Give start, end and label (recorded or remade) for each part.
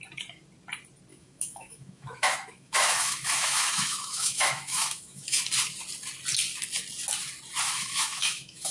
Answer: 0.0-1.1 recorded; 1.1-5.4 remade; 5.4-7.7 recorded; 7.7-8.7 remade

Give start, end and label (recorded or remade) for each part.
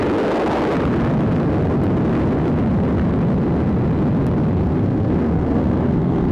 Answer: 0.0-4.6 recorded; 4.6-6.3 remade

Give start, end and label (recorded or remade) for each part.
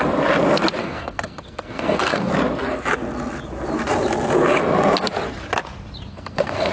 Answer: 0.0-0.8 recorded; 0.8-2.3 remade; 2.3-6.1 recorded; 6.1-6.7 remade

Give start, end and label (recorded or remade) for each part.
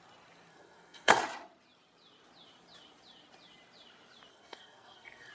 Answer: 0.0-0.5 recorded; 0.5-1.2 remade; 1.2-4.3 recorded; 4.3-5.3 remade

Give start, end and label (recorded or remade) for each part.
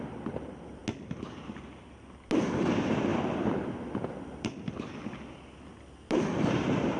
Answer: 0.0-0.8 remade; 0.8-2.4 recorded; 2.4-3.1 remade; 3.1-6.1 recorded; 6.1-7.0 remade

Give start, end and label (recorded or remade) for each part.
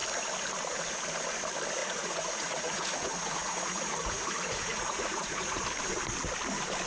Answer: 0.0-1.8 recorded; 1.8-5.6 remade; 5.6-6.9 recorded